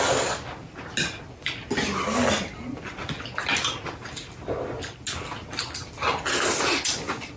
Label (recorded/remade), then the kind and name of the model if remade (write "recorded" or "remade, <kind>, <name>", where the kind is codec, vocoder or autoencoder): recorded